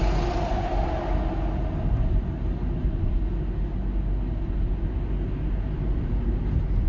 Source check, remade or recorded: recorded